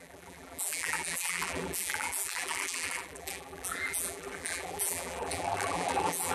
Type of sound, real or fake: fake